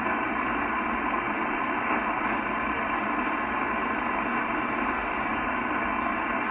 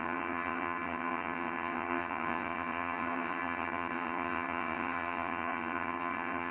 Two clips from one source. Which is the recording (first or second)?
first